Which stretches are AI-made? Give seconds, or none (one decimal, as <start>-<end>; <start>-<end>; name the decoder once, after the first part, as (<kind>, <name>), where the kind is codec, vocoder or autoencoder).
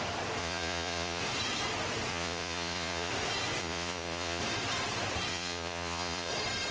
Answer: 0.4-1.2 (vocoder, Vocos); 2.1-3.1; 3.6-4.4; 5.3-6.3